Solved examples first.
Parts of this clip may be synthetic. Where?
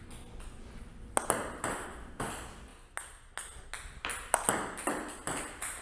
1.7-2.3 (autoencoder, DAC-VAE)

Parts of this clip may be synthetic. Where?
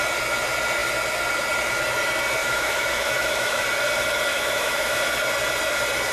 2.4-3.6 (autoencoder, DAC-VAE); 4.3-5.0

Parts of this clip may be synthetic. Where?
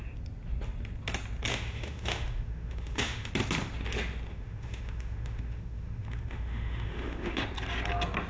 1.5-3.3 (autoencoder, DAC-VAE); 4.3-7.4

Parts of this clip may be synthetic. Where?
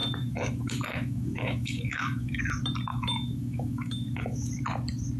0.0-2.4 (autoencoder, DAC-VAE); 2.9-4.5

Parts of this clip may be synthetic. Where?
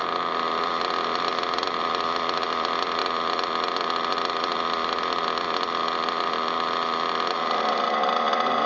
none